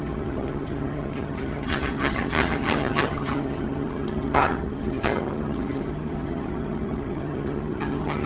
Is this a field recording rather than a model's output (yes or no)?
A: no